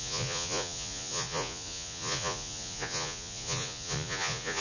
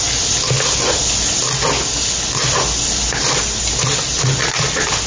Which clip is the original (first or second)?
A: second